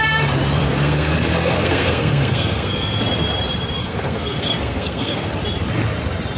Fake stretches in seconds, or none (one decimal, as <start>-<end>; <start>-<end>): 0.6-3.0; 3.8-5.3